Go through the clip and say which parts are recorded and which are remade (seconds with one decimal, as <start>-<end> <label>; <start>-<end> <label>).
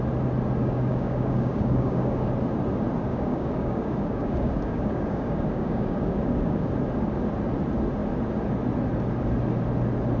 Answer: 0.0-0.6 recorded; 0.6-2.3 remade; 2.3-3.1 recorded; 3.1-6.7 remade; 6.7-10.2 recorded